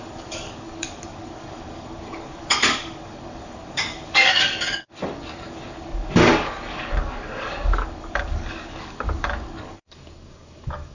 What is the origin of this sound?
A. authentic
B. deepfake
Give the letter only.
B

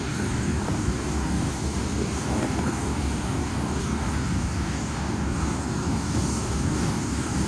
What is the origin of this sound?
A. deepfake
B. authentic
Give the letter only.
A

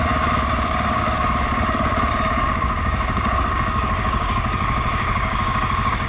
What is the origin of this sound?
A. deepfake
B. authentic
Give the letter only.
A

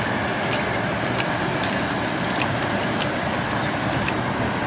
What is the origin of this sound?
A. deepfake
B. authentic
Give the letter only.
B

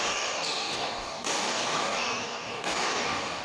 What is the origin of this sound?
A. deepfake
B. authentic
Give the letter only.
A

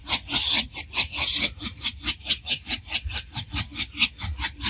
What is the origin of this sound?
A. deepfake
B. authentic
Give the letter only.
B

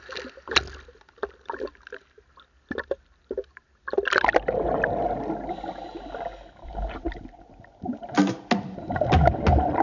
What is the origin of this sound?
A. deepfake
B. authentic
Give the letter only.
B